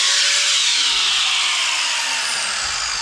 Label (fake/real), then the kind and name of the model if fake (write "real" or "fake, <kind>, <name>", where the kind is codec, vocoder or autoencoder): real